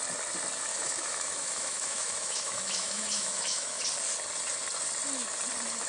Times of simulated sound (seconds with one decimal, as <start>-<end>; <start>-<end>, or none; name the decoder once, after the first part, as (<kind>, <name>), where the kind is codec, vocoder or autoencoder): 0.7-3.8 (autoencoder, DAC-VAE)

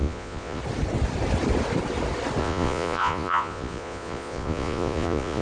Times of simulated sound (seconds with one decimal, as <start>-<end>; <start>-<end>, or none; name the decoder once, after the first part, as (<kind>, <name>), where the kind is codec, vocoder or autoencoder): 0.0-0.6 (vocoder, Vocos); 2.4-5.4